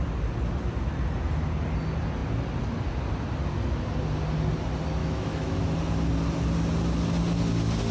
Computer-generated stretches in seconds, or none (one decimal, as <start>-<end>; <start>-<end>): 5.0-5.6